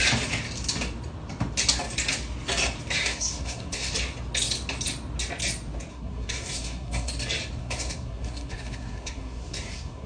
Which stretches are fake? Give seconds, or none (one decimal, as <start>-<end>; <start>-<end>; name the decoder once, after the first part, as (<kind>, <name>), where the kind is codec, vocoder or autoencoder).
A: 3.0-3.9 (codec, SNAC); 5.9-7.1; 7.6-10.1